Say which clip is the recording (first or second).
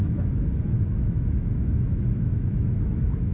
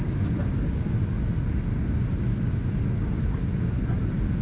second